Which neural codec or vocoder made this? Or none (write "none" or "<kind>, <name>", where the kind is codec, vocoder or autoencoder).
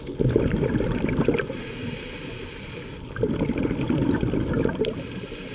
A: none